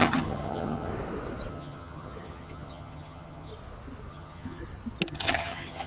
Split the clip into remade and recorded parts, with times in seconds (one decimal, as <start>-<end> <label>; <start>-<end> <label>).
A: 0.0-0.9 remade; 0.9-1.5 recorded; 1.5-3.5 remade; 3.5-4.1 recorded; 4.1-4.6 remade; 4.6-5.1 recorded; 5.1-5.9 remade